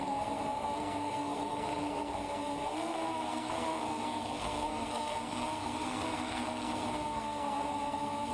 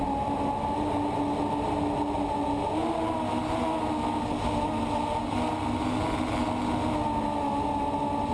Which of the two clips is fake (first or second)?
first